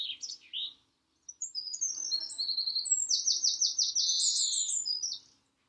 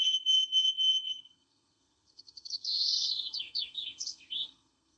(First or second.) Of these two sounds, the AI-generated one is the second